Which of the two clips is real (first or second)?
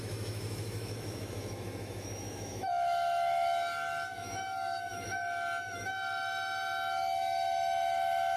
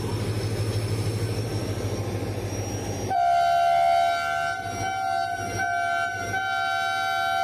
second